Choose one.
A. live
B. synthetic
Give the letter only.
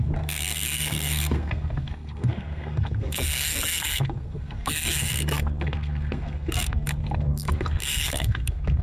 B